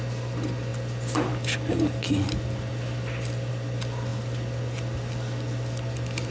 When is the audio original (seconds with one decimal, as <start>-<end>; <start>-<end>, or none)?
0.0-6.3